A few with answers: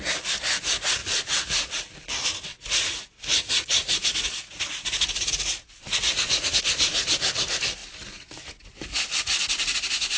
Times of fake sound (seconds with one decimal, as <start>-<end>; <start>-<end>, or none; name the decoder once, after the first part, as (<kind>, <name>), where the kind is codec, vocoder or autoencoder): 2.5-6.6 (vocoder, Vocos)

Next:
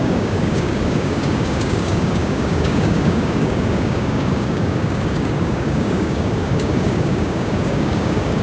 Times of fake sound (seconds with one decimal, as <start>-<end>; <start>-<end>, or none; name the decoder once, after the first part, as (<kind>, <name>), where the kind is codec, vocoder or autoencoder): 0.0-8.4 (codec, DAC)

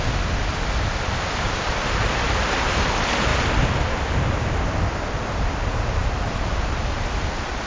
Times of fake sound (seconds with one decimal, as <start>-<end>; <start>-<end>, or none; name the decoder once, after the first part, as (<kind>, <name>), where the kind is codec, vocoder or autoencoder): 0.0-0.4 (vocoder, BigVGAN v2); 1.7-3.3; 5.1-7.7

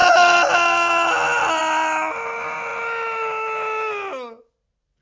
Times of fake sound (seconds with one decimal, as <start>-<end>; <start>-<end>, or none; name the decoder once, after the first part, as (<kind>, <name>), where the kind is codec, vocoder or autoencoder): none

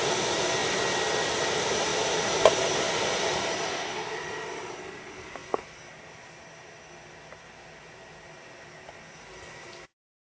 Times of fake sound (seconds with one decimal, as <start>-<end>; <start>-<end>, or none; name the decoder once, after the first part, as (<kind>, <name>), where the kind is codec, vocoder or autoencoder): none

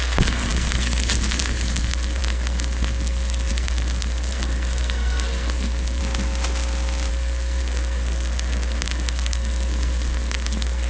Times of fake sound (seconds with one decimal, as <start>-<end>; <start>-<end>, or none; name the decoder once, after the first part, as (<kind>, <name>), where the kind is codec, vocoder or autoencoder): 0.0-6.0 (codec, SNAC); 7.1-10.9